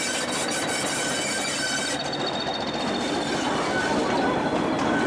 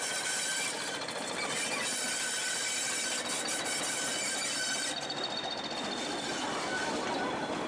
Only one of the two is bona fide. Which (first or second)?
first